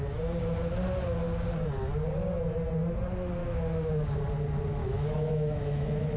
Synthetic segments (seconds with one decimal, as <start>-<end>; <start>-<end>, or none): 3.4-3.9; 4.8-6.2